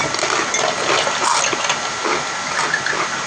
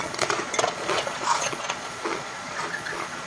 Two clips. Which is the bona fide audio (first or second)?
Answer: first